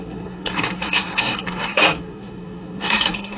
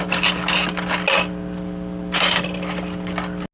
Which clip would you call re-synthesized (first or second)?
first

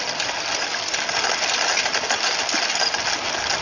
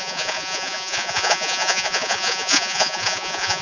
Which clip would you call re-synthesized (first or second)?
second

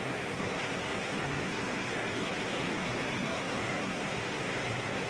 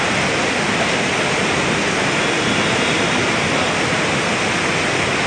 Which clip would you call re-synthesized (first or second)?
first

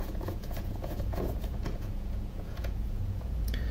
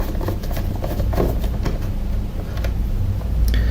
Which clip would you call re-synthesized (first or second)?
first